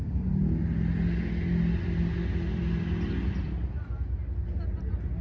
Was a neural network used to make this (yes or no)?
no